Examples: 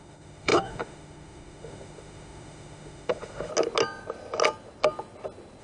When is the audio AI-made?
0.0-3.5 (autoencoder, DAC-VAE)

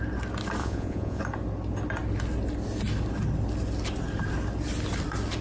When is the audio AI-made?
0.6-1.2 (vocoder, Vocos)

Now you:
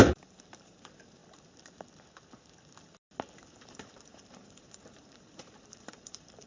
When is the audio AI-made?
0.0-1.2 (vocoder, BigVGAN v2); 3.4-6.5

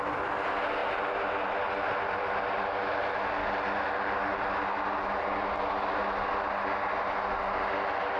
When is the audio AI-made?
none

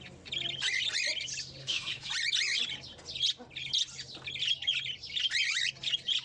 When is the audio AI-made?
1.6-2.1 (autoencoder, DAC-VAE)

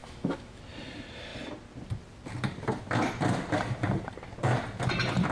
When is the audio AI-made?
0.0-0.6 (autoencoder, DAC-VAE)